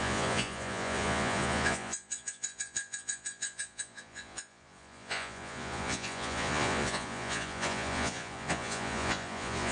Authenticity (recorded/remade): remade